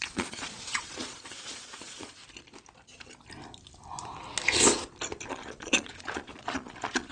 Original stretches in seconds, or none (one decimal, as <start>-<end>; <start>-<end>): 2.2-5.3